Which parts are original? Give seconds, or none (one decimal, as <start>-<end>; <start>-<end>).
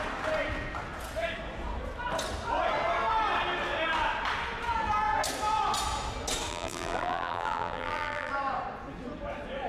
0.0-6.5; 8.3-9.7